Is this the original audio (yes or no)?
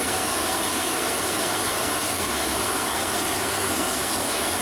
no